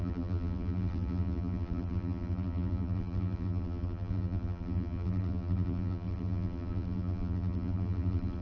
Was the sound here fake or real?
fake